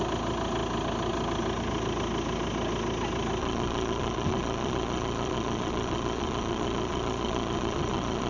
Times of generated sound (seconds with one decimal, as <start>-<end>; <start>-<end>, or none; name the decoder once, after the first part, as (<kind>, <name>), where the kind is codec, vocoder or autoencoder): 3.4-8.3 (vocoder, Vocos)